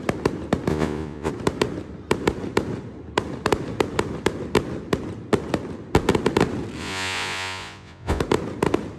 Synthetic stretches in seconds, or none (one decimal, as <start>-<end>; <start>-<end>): 0.7-1.3; 6.8-8.2